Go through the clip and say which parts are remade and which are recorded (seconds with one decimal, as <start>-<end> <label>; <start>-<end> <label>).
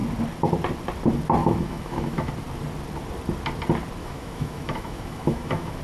0.0-1.4 recorded; 1.4-2.3 remade; 2.3-4.0 recorded; 4.0-5.8 remade